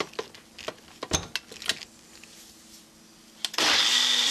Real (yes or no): yes